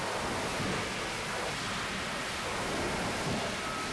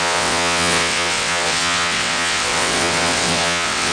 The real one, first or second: first